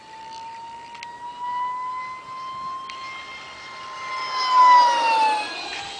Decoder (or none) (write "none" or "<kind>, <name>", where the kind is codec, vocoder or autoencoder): none